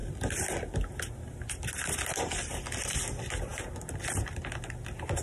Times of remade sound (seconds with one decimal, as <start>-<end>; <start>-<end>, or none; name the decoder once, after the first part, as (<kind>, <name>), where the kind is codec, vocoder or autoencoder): none